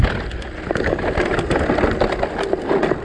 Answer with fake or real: real